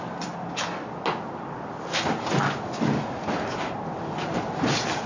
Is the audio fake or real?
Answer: real